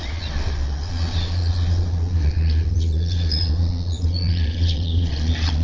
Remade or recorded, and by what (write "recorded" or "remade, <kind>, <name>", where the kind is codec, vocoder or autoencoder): remade, vocoder, Vocos